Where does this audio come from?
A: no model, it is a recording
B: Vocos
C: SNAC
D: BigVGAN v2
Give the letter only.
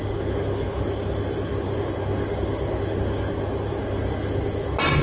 A